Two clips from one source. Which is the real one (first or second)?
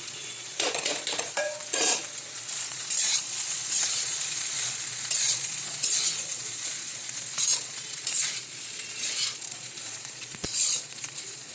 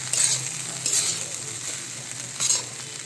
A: second